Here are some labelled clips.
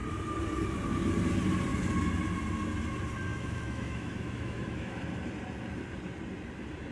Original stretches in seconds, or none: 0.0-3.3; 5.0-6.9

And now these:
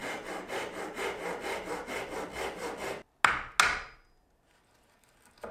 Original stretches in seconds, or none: 0.0-5.5

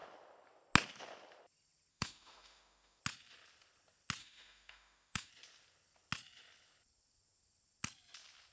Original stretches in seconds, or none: 0.0-1.9; 3.0-4.2; 5.3-8.5

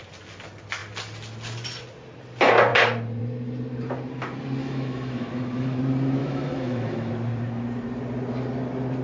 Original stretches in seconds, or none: 0.0-4.6; 5.8-6.2; 7.1-9.0

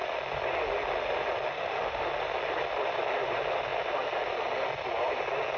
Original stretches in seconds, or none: 0.0-1.5; 2.1-5.6